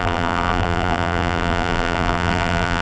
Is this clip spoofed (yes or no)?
yes